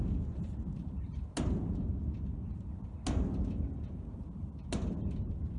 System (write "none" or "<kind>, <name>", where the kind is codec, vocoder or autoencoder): none